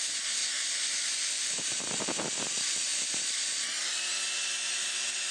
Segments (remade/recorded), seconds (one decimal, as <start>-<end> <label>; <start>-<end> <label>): 0.0-5.3 recorded

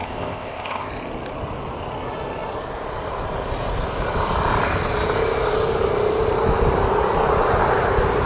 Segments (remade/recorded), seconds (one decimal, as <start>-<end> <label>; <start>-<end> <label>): 0.0-0.9 remade; 0.9-8.3 recorded

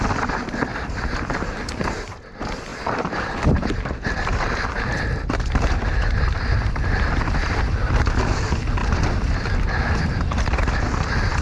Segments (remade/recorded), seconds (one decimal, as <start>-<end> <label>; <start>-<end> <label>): 0.0-0.7 recorded; 0.7-1.9 remade; 1.9-2.7 recorded; 2.7-8.0 remade; 8.0-8.8 recorded; 8.8-9.5 remade; 9.5-11.4 recorded